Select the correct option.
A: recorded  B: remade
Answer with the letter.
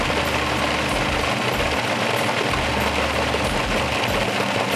A